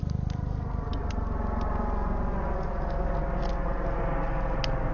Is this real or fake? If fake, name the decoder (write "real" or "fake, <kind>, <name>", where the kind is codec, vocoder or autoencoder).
real